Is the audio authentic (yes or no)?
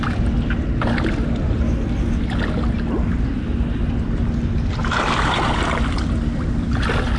yes